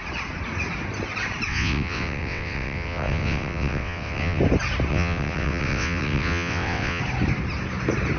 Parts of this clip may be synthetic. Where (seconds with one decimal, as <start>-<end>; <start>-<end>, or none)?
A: 1.5-4.4; 4.9-7.0